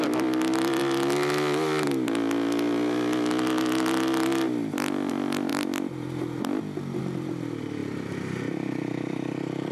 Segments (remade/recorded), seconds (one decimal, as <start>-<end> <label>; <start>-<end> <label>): 0.0-0.8 remade; 0.8-5.1 recorded; 5.1-5.5 remade; 5.5-7.0 recorded; 7.0-9.7 remade